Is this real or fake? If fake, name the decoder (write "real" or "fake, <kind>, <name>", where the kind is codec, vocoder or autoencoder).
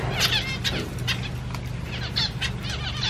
real